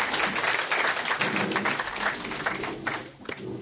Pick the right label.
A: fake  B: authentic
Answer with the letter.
B